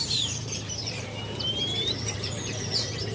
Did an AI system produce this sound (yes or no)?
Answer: yes